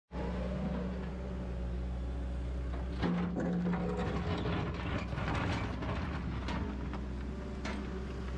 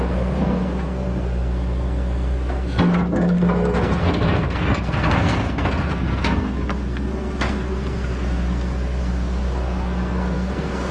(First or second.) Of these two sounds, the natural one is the first